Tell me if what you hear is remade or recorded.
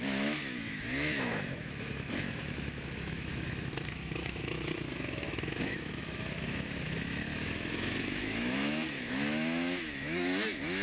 remade